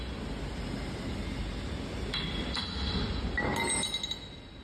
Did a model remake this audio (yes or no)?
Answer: no